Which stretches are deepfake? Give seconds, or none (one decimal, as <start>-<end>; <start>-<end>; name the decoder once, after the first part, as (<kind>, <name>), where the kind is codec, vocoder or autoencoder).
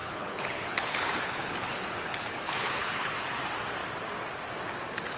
0.0-3.1 (codec, HILCodec)